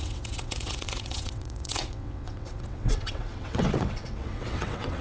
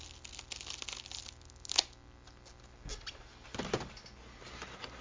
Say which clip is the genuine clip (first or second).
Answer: second